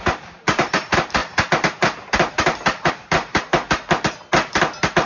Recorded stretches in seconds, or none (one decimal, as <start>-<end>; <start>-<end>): 1.2-2.3; 3.5-5.1